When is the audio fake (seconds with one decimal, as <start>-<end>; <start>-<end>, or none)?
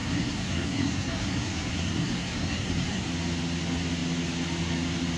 0.0-3.1